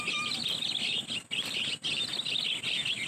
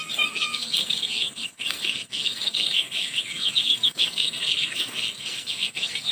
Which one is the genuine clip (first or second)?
first